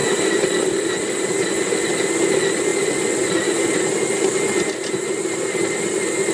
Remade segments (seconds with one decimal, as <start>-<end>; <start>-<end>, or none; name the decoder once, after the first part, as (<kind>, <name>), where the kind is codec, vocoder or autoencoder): none